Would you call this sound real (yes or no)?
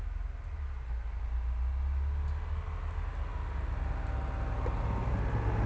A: yes